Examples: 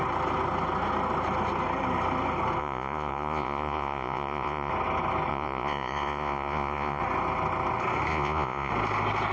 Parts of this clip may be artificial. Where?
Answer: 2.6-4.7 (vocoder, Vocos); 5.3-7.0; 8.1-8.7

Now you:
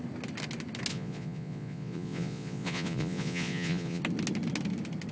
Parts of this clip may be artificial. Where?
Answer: 0.9-4.0 (vocoder, Vocos)

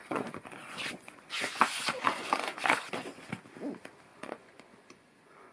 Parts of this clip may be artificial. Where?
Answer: 0.0-3.3 (vocoder, Vocos); 4.1-5.5

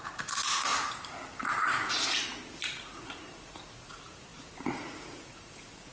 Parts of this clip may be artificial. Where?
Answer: 0.0-0.7 (vocoder, Vocos); 1.5-5.9

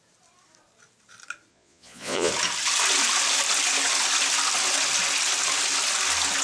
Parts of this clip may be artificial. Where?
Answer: 1.5-2.3 (vocoder, Vocos)

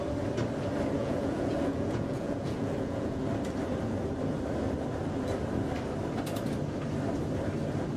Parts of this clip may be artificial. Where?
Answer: 1.0-3.2 (vocoder, Vocos)

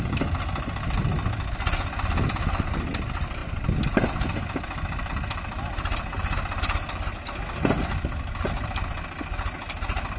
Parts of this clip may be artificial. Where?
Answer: none